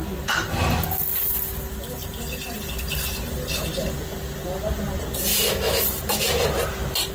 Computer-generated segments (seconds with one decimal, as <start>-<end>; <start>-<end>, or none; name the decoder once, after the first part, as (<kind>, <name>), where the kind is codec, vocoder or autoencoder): 5.3-6.0 (autoencoder, DAC-VAE)